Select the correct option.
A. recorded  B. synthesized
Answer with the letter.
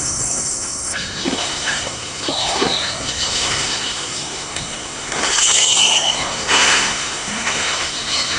B